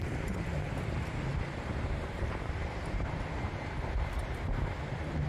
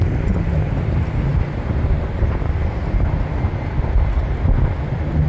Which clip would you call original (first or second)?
second